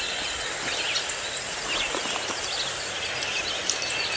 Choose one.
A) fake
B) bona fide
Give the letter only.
B